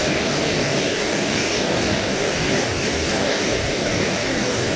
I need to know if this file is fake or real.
fake